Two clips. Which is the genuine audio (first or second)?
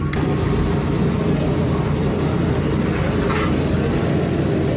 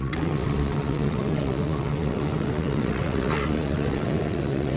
first